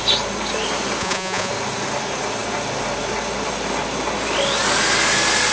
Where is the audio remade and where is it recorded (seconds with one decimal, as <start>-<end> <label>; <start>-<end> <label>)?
0.0-1.0 recorded; 1.0-1.5 remade; 1.5-5.5 recorded